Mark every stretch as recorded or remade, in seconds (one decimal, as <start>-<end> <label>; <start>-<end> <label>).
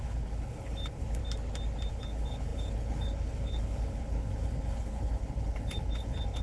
0.0-1.2 remade; 1.2-1.9 recorded; 1.9-6.4 remade